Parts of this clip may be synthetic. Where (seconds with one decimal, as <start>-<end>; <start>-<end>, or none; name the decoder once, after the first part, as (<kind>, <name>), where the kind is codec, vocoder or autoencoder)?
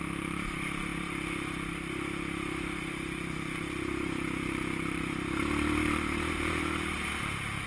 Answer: 0.0-0.9 (vocoder, BigVGAN v2); 2.8-7.7